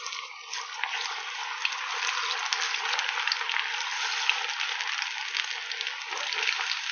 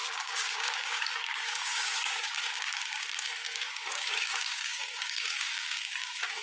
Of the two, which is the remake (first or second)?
second